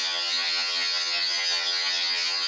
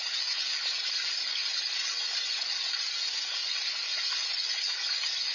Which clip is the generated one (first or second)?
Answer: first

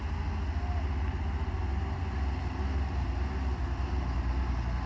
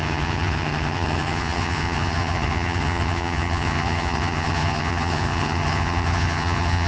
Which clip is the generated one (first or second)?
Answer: second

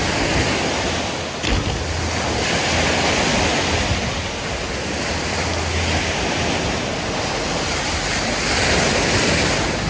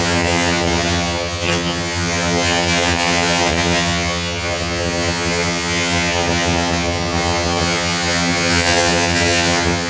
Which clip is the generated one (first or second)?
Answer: second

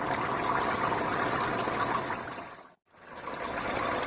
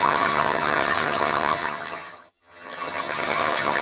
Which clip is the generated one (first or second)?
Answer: second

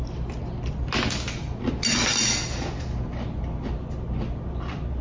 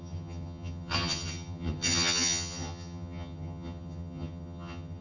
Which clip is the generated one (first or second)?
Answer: second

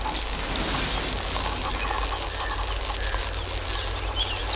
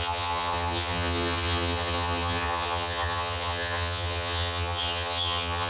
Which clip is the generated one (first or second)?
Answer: second